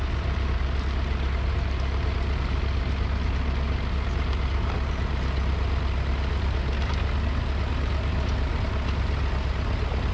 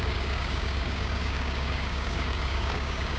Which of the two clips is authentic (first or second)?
first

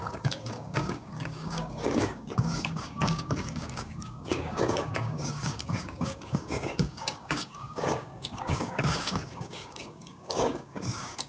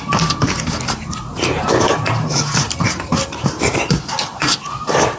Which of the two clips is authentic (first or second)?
second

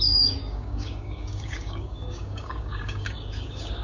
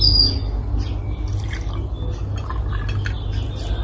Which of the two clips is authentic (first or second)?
second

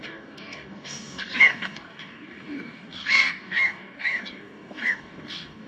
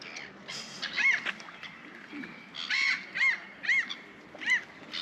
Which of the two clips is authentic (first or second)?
second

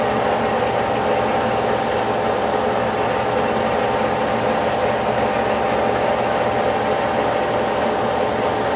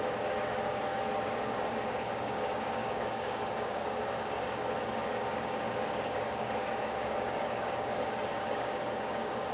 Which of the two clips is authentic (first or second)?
first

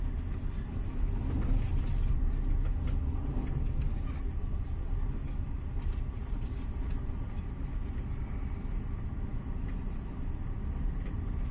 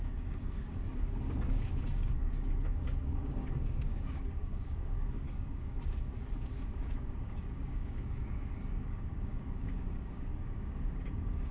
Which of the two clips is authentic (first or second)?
first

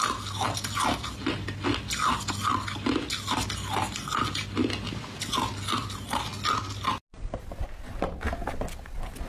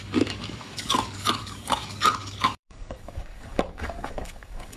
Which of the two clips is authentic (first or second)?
first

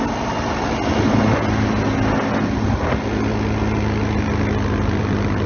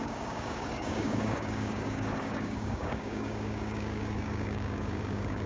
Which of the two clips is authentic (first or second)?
first